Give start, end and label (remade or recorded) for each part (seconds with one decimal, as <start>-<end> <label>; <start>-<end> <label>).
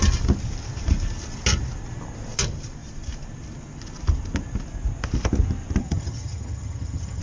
0.0-5.8 recorded; 5.8-7.2 remade